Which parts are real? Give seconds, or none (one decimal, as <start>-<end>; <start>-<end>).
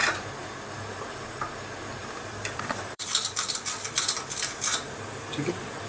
0.0-2.0; 5.5-5.9